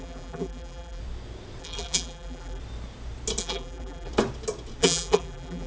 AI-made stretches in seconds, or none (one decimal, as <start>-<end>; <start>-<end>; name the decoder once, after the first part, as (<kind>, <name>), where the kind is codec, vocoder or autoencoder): 0.0-1.0 (vocoder, BigVGAN v2); 1.6-2.6; 3.4-4.1; 4.8-5.7